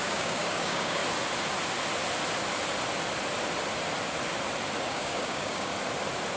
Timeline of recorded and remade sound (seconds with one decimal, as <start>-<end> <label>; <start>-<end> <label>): 0.0-1.0 remade; 1.0-4.8 recorded; 4.8-5.7 remade; 5.7-6.4 recorded